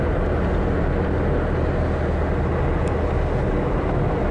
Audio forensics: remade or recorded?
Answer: recorded